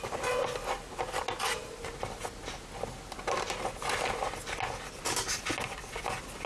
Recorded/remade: recorded